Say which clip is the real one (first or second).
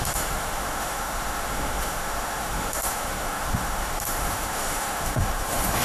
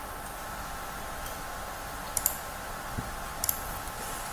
second